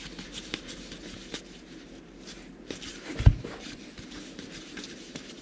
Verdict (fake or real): fake